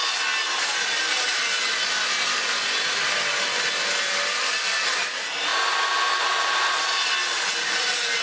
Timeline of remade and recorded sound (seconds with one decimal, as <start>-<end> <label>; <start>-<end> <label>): 0.0-5.5 recorded; 5.5-7.1 remade; 7.1-8.2 recorded